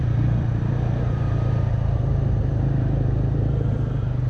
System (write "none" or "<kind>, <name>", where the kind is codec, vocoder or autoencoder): vocoder, BigVGAN v2